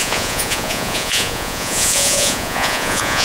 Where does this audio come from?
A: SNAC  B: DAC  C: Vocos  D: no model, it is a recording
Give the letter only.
C